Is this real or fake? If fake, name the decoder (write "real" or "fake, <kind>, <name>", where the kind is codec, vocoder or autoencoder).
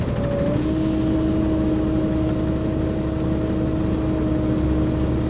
real